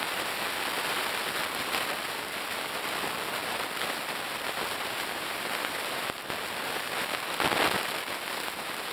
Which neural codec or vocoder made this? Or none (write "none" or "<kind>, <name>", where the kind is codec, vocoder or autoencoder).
none